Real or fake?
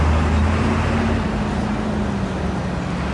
real